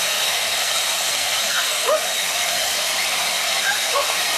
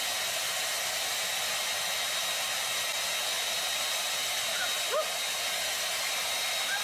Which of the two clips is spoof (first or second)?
first